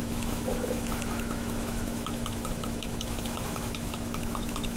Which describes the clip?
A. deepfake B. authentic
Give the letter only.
A